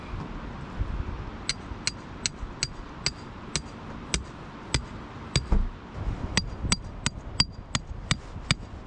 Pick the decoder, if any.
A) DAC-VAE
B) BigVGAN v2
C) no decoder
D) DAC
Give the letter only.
C